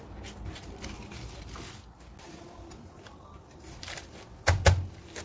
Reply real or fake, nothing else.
real